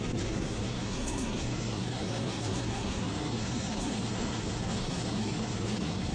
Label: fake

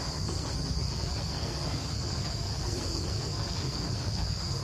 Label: fake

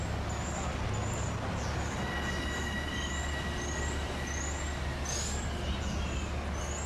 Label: real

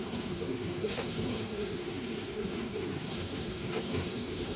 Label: fake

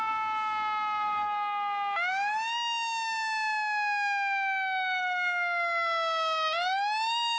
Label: real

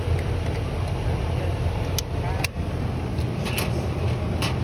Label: real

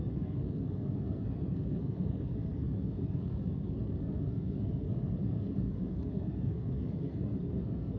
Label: fake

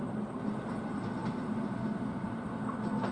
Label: real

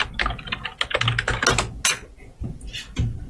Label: real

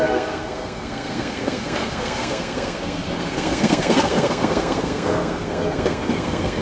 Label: fake